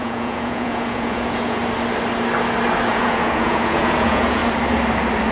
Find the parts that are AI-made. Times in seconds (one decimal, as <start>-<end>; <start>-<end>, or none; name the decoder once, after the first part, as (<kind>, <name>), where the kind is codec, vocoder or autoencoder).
0.0-1.6 (vocoder, Vocos); 2.9-4.4